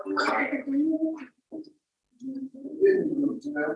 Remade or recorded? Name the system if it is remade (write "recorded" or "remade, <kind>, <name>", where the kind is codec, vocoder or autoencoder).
recorded